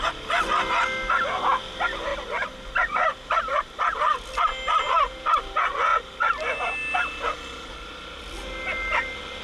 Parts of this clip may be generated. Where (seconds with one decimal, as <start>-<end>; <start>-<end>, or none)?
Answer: none